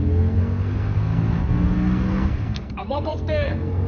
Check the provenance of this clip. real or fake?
fake